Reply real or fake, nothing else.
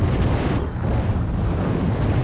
real